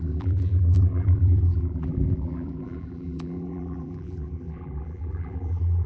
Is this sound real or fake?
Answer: fake